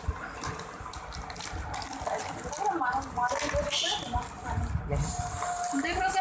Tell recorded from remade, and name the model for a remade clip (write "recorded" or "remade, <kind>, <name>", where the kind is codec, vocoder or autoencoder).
recorded